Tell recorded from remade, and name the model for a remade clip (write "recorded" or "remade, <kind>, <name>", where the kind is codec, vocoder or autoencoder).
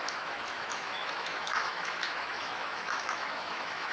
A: remade, autoencoder, DAC-VAE